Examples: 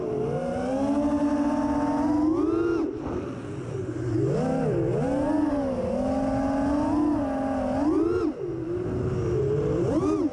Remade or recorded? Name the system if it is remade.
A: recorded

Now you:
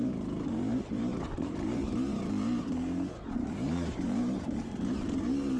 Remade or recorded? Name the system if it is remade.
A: remade, vocoder, BigVGAN v2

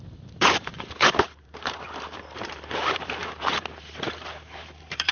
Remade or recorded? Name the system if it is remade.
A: remade, vocoder, BigVGAN v2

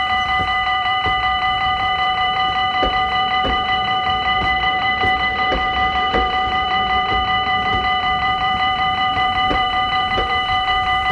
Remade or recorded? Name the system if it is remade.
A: remade, vocoder, BigVGAN v2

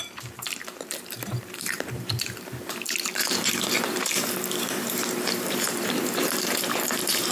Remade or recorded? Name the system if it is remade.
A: remade, vocoder, BigVGAN v2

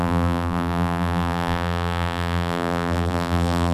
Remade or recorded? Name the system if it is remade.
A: remade, vocoder, BigVGAN v2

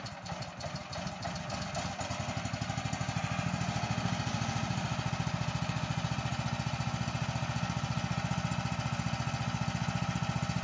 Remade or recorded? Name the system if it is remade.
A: recorded